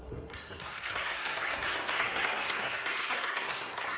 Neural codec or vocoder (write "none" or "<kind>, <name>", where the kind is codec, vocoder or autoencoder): codec, SNAC